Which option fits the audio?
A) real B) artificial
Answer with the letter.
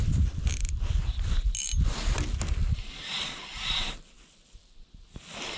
A